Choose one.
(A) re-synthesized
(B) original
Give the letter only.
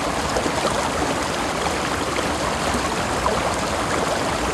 B